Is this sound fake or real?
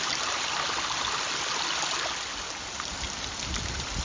real